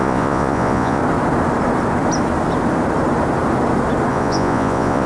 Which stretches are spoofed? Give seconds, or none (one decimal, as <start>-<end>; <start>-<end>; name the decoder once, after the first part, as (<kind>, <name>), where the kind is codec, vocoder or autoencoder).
0.0-1.0 (vocoder, Vocos); 4.1-5.1